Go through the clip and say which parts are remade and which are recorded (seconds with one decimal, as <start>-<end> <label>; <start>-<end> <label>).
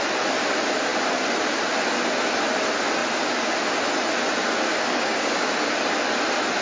0.0-4.7 recorded; 4.7-5.5 remade; 5.5-6.6 recorded